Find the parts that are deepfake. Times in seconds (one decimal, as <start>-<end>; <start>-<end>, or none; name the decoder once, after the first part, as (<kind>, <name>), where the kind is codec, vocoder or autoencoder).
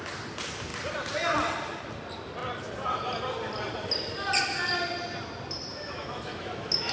5.7-6.9 (autoencoder, DAC-VAE)